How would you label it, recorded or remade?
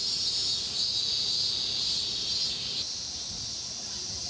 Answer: recorded